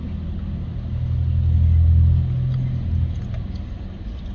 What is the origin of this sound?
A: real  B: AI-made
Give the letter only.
A